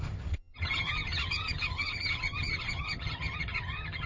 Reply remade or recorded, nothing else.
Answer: remade